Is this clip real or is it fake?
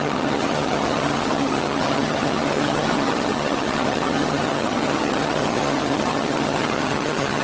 fake